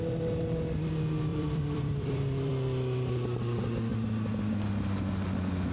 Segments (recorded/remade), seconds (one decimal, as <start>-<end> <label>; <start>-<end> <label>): 0.0-1.3 recorded; 1.3-2.5 remade; 2.5-5.7 recorded